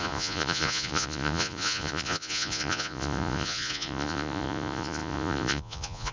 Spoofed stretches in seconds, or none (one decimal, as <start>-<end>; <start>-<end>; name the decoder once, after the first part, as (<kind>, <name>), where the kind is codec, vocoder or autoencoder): 0.0-6.1 (vocoder, Vocos)